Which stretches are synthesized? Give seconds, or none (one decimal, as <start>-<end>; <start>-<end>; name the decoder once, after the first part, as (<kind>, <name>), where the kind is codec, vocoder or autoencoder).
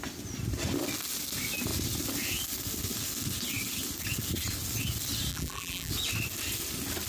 5.3-5.9 (vocoder, BigVGAN v2)